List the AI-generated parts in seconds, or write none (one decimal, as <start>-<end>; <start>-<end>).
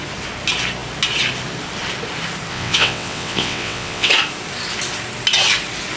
2.5-4.1